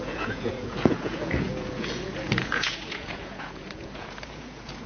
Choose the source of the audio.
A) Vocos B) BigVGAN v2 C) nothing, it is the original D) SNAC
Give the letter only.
A